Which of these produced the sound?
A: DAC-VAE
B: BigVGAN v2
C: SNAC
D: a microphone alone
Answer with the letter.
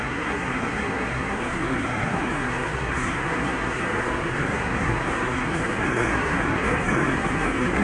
C